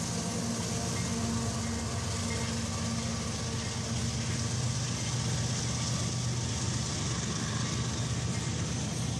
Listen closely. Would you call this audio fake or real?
real